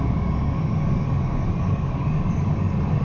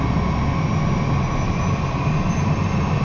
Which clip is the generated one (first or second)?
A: first